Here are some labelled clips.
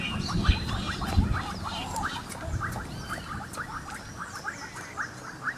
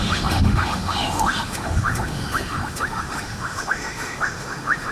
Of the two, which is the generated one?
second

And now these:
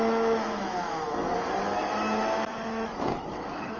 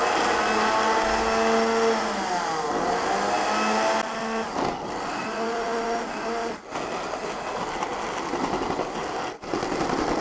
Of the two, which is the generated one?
first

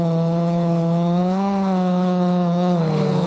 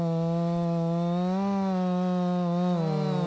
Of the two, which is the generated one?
first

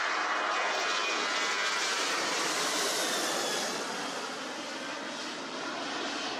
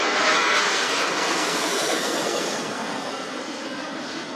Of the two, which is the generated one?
second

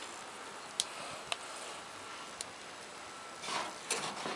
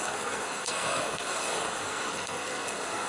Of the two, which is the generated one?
second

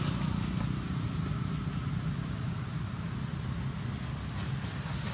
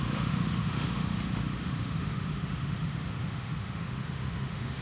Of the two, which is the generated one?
second